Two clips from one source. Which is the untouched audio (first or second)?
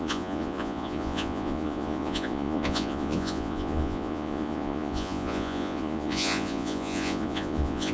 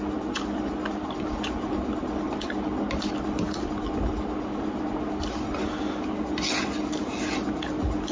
second